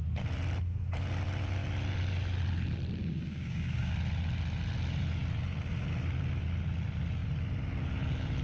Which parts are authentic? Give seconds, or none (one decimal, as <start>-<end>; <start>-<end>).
0.0-3.0; 3.9-8.4